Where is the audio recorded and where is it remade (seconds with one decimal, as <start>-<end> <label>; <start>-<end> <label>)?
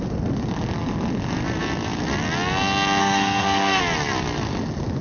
0.0-3.0 recorded; 3.0-3.8 remade; 3.8-5.0 recorded